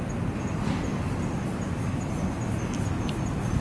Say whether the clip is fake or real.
real